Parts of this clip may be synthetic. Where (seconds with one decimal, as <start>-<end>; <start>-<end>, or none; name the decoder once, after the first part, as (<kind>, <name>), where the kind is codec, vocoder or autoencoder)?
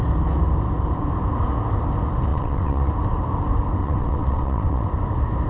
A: 2.3-2.9 (vocoder, WaveNeXt); 3.8-4.9